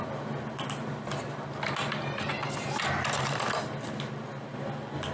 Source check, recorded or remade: recorded